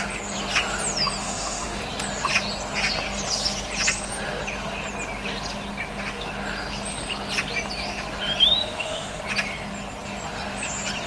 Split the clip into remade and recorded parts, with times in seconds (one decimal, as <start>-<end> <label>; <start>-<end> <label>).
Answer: 0.0-1.2 recorded; 1.2-1.8 remade; 1.8-8.6 recorded; 8.6-9.2 remade; 9.2-11.1 recorded